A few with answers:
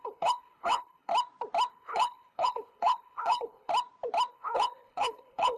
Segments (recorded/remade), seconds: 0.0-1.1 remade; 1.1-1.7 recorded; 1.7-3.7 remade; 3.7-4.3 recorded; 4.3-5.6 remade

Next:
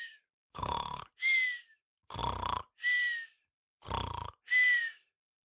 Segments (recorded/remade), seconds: 0.0-1.0 remade; 1.0-5.4 recorded